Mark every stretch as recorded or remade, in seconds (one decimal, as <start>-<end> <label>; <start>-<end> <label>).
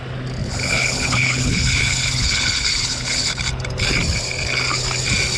0.0-0.4 recorded; 0.4-3.4 remade; 3.4-5.4 recorded